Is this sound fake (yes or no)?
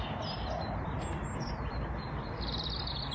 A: no